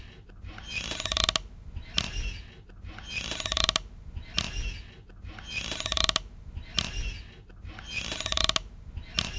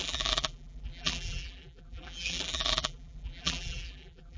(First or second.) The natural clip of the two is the first